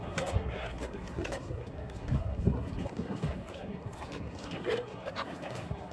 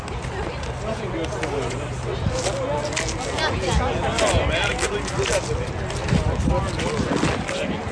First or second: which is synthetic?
first